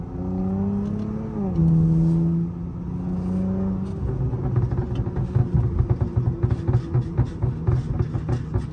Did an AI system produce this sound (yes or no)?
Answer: no